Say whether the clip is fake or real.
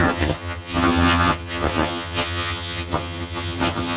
fake